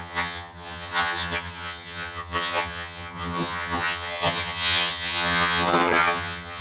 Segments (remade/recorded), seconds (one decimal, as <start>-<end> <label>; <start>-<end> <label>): 0.0-6.6 remade